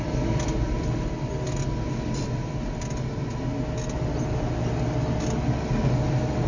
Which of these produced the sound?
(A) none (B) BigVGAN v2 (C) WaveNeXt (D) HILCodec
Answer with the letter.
A